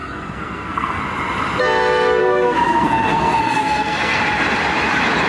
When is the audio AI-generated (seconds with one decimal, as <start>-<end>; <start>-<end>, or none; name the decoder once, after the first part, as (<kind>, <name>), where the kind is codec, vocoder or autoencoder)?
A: 0.0-1.0 (codec, SNAC); 2.2-4.2